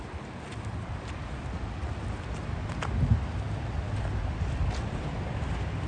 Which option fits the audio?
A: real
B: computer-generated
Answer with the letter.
A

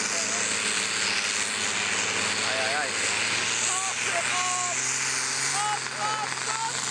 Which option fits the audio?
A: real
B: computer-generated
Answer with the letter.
A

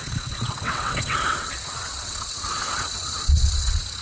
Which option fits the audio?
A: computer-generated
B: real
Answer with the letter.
A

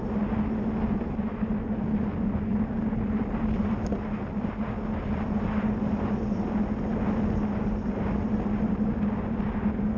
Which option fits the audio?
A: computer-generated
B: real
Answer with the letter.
B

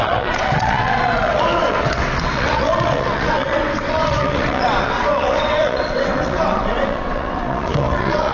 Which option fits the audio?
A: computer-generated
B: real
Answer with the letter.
A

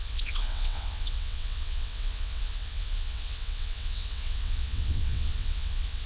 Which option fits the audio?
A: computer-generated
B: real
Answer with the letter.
A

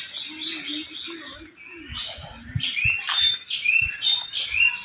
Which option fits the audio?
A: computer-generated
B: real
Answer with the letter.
B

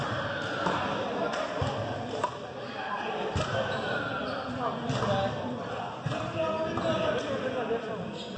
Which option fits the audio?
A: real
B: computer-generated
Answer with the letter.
A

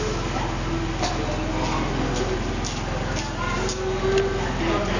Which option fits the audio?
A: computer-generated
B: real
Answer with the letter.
B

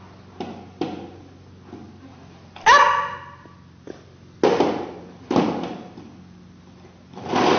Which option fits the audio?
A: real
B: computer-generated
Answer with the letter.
A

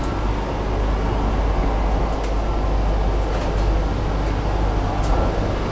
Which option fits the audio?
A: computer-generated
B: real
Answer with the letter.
B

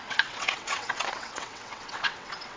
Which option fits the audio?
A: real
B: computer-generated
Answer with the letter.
B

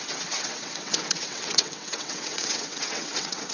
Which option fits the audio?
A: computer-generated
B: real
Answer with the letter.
A